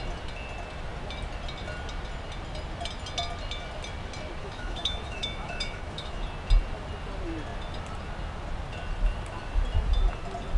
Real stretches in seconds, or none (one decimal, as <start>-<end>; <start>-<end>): 0.0-4.4; 6.2-10.6